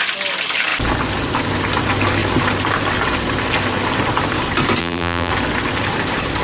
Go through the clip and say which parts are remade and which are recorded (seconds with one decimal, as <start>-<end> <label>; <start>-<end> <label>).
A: 0.0-4.8 recorded; 4.8-5.3 remade; 5.3-6.4 recorded